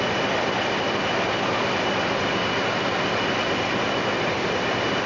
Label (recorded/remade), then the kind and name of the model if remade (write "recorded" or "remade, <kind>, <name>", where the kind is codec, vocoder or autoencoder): recorded